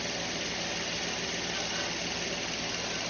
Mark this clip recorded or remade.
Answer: recorded